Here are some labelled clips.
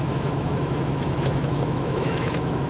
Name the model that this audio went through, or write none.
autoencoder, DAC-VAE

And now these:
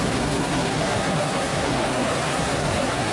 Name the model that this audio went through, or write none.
codec, SNAC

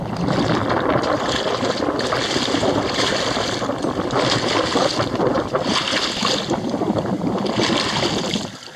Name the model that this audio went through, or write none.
none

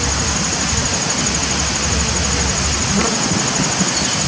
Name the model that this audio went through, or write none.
none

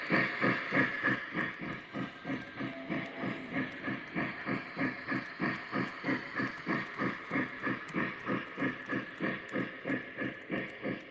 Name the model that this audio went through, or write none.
none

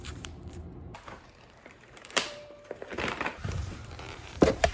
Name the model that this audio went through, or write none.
vocoder, BigVGAN v2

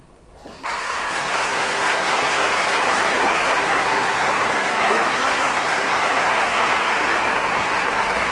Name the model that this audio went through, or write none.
codec, SNAC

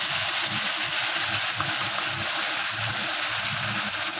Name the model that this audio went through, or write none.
none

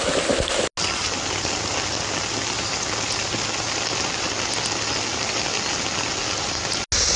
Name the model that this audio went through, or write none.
none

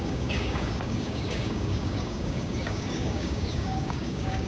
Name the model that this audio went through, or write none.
codec, DAC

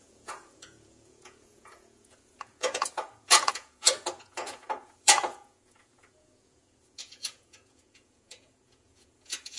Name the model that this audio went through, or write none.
vocoder, Vocos